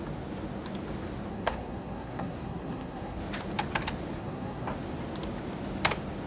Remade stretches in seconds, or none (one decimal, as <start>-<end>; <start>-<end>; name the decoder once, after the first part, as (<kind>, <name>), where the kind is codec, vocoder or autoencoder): 1.3-3.2 (codec, SNAC); 4.2-4.7